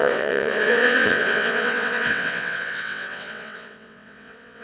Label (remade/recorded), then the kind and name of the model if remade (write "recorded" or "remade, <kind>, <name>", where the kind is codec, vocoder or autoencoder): remade, vocoder, WaveNeXt